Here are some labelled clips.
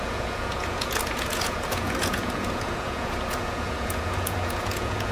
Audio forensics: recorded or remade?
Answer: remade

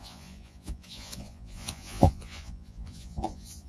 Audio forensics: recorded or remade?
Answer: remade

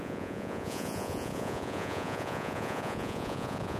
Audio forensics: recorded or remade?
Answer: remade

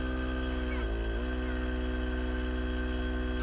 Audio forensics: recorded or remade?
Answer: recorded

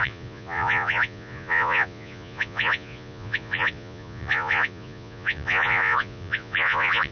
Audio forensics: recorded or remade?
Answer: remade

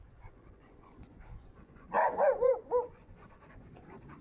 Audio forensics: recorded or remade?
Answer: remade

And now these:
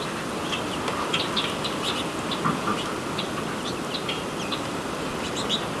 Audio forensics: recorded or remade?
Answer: recorded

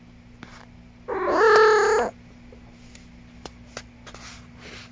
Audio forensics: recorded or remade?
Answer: recorded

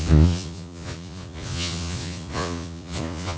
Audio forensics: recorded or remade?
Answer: remade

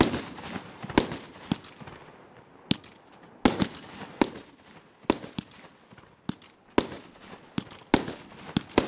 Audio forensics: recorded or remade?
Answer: recorded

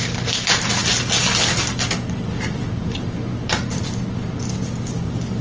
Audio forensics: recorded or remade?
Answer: recorded